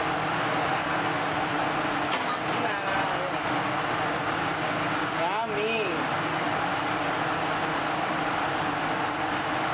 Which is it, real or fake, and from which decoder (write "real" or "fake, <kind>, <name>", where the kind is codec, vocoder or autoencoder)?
real